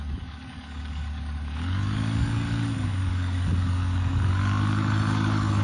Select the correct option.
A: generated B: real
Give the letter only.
A